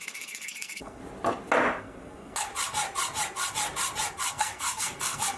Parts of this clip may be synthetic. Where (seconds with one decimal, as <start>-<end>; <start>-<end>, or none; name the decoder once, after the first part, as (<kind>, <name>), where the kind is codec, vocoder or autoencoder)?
0.0-1.0 (codec, SNAC); 1.8-2.5; 4.3-5.4